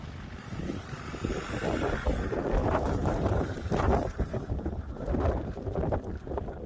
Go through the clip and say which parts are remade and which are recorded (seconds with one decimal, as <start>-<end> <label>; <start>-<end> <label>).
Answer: 0.0-2.6 recorded; 2.6-5.1 remade; 5.1-6.7 recorded